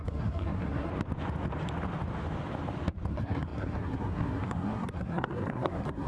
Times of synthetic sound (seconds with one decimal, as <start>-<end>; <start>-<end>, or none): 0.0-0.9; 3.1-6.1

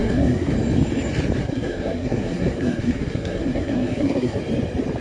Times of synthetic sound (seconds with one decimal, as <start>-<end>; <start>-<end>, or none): 0.0-0.5; 1.4-4.4

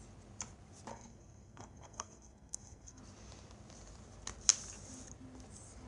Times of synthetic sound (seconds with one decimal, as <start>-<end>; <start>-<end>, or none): 0.9-3.0

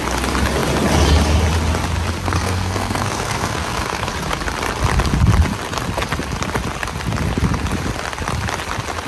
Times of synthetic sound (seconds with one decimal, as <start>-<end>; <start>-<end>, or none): 2.2-4.1

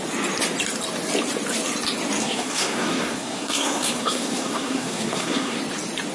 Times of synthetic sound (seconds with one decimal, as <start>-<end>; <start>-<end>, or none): 2.2-5.6